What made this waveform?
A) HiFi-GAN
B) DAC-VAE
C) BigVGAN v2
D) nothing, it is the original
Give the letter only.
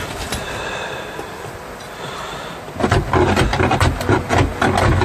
C